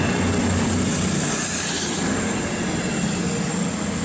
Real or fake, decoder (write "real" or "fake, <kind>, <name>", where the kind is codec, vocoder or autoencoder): real